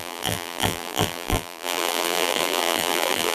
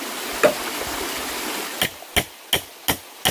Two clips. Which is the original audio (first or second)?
second